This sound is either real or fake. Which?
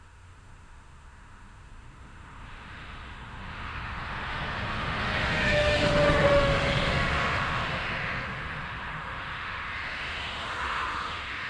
fake